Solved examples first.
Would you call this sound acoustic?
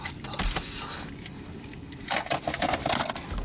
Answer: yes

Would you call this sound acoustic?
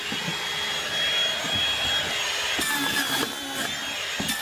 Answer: yes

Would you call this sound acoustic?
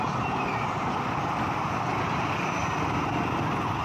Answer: yes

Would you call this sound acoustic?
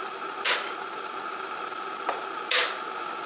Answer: yes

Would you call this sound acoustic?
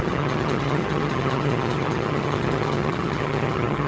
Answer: no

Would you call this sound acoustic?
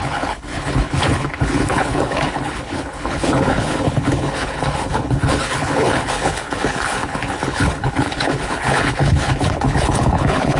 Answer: no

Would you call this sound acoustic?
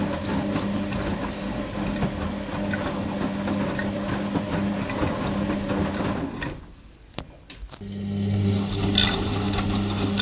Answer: yes